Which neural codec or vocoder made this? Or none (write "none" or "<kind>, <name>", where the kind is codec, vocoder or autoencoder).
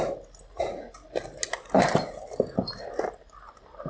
none